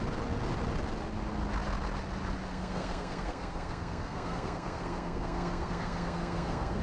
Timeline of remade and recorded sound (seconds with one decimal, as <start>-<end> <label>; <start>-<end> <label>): 0.0-2.5 recorded; 2.5-6.8 remade